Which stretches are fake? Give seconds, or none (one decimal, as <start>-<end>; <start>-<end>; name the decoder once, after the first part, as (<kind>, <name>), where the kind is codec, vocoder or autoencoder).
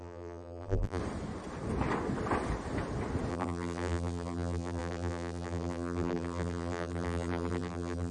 0.0-1.0 (vocoder, BigVGAN v2); 3.3-8.1